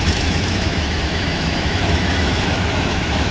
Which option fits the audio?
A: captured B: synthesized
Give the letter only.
B